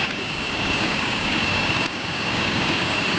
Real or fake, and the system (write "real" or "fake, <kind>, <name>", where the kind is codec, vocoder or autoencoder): fake, codec, DAC